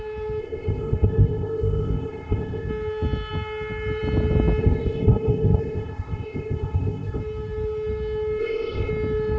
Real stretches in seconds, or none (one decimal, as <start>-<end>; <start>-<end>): 0.0-0.4; 2.7-4.6; 7.2-8.4; 8.9-9.4